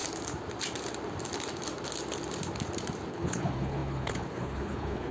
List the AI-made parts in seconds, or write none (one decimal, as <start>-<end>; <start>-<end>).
3.1-5.1